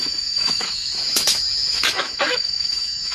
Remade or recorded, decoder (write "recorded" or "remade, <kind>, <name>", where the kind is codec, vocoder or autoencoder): remade, autoencoder, DAC-VAE